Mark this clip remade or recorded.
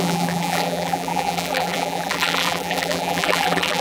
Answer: remade